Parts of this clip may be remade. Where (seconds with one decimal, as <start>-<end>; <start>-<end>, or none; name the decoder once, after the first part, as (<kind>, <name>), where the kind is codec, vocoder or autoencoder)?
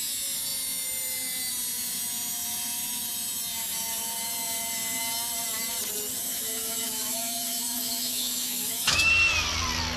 6.2-9.1 (autoencoder, DAC-VAE)